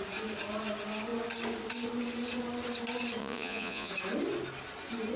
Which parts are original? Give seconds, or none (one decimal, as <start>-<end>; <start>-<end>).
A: 0.0-3.2; 3.9-5.2